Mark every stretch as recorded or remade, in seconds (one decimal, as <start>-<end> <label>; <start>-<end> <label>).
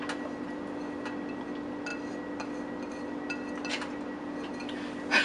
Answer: 0.0-5.2 recorded